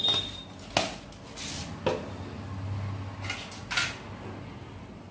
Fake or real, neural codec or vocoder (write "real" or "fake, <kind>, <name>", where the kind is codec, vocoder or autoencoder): real